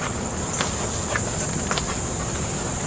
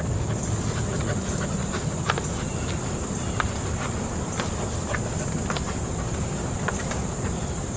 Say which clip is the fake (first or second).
second